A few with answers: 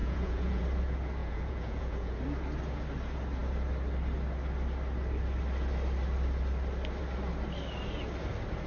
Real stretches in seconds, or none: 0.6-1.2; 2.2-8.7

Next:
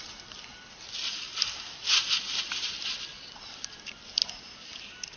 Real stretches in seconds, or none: 0.0-5.2

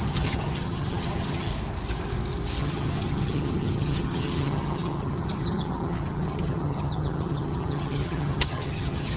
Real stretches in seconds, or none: 1.5-2.6